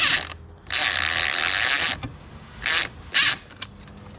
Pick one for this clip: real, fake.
real